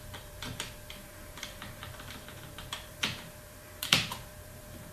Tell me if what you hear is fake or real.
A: fake